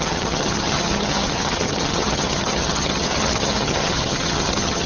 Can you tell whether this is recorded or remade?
remade